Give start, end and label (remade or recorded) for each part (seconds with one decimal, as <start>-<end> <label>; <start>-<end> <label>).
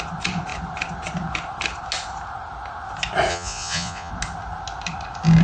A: 0.0-3.3 recorded; 3.3-4.1 remade; 4.1-5.4 recorded